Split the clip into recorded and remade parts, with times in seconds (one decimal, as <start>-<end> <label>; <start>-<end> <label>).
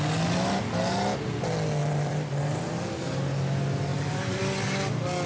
0.0-1.8 recorded; 1.8-3.4 remade; 3.4-3.9 recorded; 3.9-4.4 remade; 4.4-5.3 recorded